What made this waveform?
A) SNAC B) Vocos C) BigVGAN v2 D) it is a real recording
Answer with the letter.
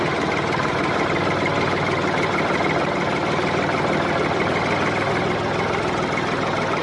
C